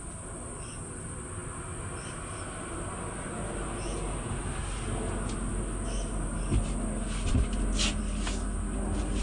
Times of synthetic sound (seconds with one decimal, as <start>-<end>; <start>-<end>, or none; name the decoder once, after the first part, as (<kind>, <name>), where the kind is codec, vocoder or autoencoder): none